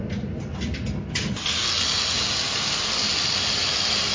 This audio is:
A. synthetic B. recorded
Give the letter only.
B